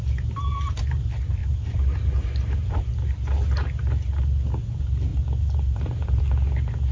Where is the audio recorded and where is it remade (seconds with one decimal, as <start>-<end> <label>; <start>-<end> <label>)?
0.0-1.0 remade; 1.0-1.4 recorded; 1.4-2.8 remade; 2.8-5.1 recorded; 5.1-6.2 remade; 6.2-6.9 recorded